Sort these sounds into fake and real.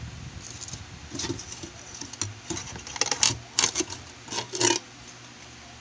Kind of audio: real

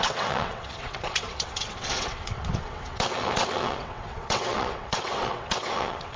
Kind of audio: fake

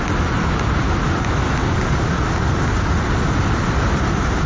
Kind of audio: real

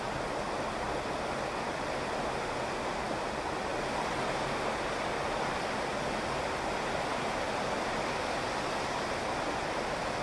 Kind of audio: real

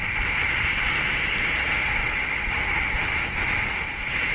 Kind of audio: real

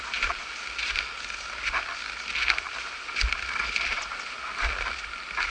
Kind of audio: real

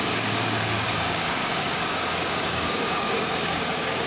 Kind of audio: fake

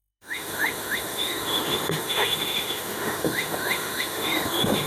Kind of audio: fake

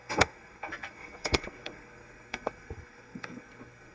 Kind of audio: fake